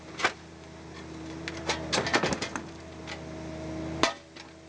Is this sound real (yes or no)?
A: yes